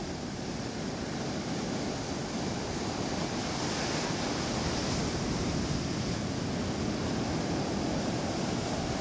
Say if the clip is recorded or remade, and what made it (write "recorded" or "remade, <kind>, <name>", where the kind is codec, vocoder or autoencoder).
recorded